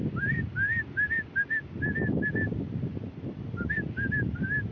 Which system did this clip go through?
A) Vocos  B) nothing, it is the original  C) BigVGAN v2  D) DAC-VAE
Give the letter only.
B